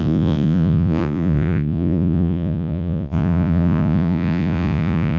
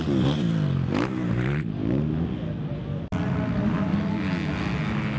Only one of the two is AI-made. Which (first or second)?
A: first